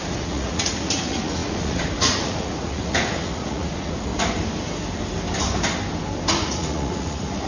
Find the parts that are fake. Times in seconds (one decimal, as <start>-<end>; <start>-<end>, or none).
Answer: 0.0-4.1; 6.3-7.5